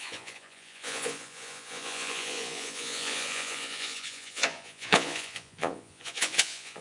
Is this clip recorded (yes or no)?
no